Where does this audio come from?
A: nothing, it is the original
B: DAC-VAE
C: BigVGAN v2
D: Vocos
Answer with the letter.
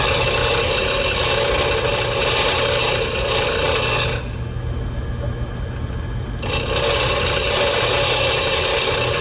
A